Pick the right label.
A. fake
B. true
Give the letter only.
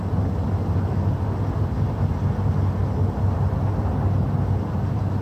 B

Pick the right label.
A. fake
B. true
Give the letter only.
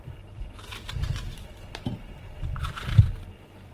A